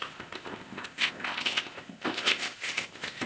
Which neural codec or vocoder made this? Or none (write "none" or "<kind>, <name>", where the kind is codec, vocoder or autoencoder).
codec, ZipCodec